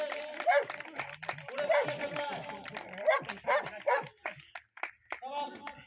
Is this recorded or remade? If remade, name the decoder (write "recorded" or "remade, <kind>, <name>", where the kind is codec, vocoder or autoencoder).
recorded